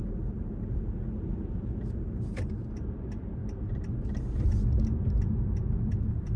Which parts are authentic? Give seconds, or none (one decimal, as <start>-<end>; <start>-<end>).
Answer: 0.0-6.4